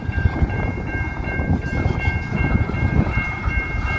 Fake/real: fake